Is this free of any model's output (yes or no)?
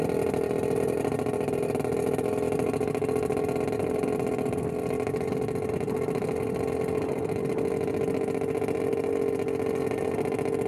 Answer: yes